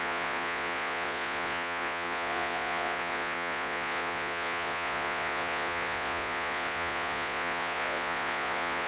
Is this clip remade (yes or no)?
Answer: yes